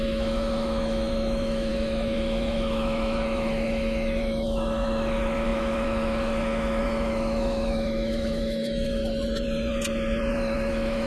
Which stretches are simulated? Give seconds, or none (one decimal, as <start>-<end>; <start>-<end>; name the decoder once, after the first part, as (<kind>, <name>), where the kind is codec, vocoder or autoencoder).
0.0-9.0 (autoencoder, DAC-VAE); 10.3-11.1